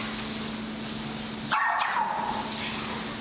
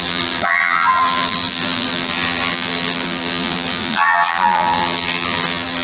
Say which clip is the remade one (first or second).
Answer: second